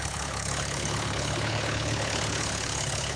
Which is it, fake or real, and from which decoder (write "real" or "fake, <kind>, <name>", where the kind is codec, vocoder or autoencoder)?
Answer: fake, codec, HILCodec